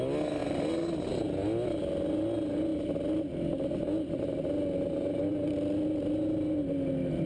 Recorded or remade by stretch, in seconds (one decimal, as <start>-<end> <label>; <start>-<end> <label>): 0.0-7.3 recorded